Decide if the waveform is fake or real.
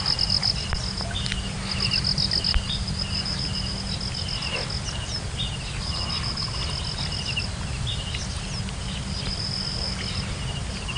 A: real